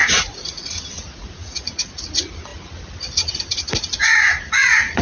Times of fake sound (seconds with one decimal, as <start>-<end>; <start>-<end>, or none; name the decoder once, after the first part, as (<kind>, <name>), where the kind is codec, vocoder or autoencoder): 0.0-1.9 (vocoder, Vocos); 4.0-5.0